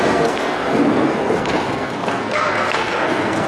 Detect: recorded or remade remade